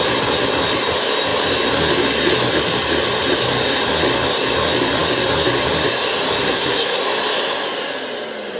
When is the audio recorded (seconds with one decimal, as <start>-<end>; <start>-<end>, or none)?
0.0-6.4; 7.0-8.6